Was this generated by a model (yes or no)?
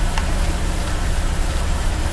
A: yes